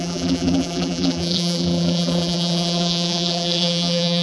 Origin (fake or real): fake